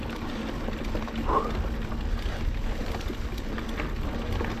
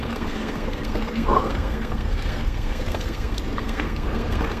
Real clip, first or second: first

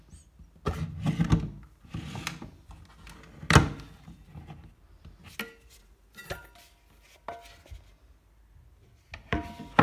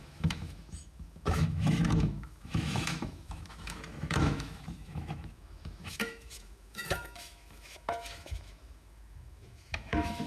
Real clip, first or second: first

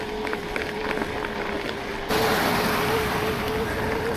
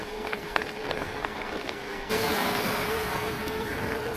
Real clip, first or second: first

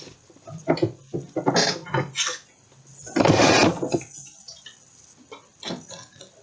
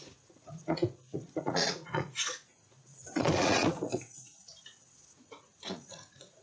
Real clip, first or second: first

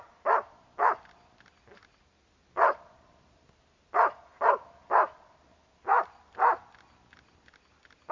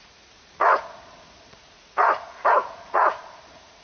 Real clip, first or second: first